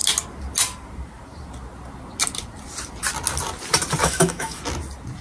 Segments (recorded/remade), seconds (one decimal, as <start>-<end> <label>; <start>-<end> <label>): 0.0-4.0 recorded; 4.0-4.6 remade; 4.6-5.2 recorded